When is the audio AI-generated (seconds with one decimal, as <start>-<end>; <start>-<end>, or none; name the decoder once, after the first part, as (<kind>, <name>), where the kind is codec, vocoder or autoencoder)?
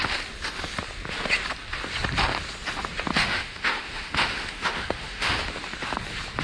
3.1-5.5 (autoencoder, DAC-VAE)